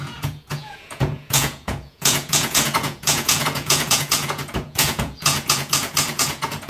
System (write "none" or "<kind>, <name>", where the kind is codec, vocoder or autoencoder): vocoder, Vocos